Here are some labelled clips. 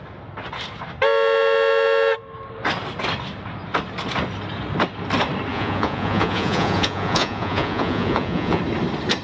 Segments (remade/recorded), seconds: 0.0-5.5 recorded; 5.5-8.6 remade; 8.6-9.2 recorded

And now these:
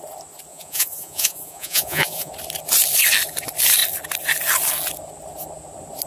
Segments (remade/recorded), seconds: 0.0-0.5 recorded; 0.5-2.3 remade; 2.3-6.1 recorded